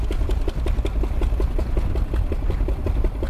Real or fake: real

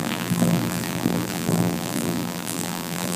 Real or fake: fake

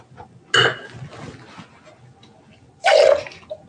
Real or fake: real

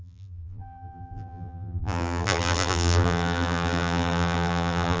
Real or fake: fake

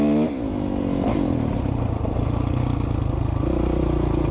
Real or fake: real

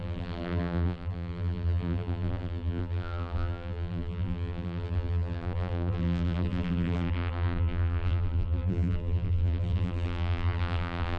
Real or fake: fake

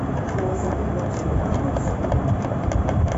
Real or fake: real